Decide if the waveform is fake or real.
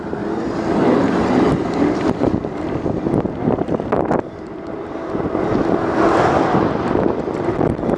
real